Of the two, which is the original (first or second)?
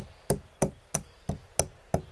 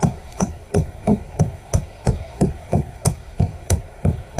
first